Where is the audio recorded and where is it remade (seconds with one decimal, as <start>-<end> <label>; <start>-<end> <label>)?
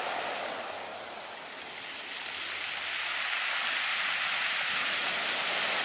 0.0-0.9 recorded; 0.9-1.6 remade; 1.6-3.9 recorded; 3.9-5.0 remade; 5.0-5.8 recorded